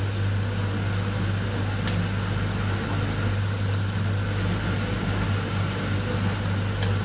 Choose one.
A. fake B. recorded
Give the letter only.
B